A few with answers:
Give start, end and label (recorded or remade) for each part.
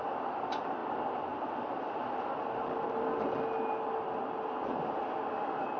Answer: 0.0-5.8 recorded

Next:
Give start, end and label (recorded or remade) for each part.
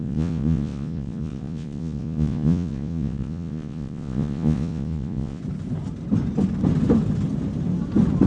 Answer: 0.0-5.4 remade; 5.4-8.3 recorded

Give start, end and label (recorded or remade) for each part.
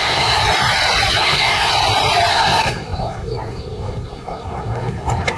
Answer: 0.0-0.4 remade; 0.4-1.2 recorded; 1.2-1.7 remade; 1.7-2.3 recorded; 2.3-5.4 remade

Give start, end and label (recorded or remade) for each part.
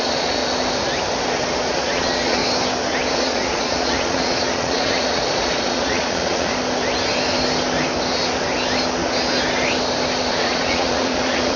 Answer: 0.0-0.4 remade; 0.4-1.7 recorded; 1.7-2.4 remade; 2.4-3.1 recorded; 3.1-6.5 remade; 6.5-10.3 recorded; 10.3-11.6 remade